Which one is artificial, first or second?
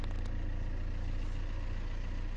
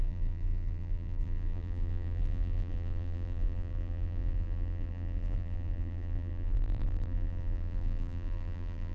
second